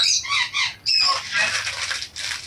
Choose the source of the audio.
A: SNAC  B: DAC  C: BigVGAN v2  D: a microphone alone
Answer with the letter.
D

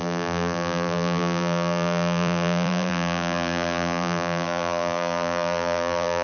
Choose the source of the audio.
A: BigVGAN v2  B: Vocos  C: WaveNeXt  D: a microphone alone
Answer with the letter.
A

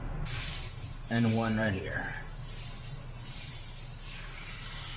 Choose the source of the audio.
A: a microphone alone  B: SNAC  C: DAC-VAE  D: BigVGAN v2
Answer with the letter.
D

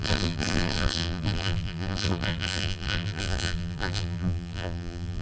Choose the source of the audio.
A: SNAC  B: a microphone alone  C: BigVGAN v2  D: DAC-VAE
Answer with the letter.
C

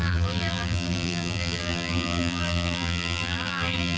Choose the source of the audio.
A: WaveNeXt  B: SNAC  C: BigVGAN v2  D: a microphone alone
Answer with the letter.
C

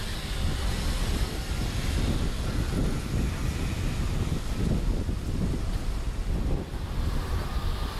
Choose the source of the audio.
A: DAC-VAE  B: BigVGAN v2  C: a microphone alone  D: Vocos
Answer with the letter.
C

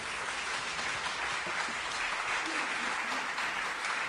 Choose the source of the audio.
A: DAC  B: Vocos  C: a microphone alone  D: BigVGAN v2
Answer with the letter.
D